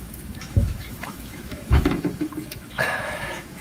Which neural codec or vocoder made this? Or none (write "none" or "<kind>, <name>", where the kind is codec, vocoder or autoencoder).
autoencoder, DAC-VAE